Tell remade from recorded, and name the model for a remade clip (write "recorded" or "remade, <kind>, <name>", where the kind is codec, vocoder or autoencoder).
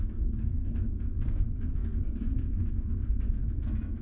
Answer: remade, codec, SNAC